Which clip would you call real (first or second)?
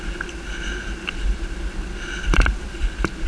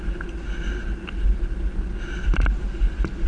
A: second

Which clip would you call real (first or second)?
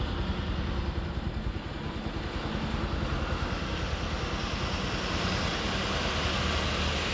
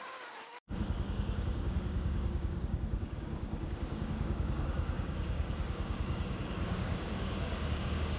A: first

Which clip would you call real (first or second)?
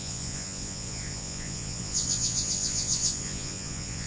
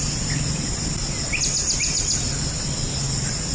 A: second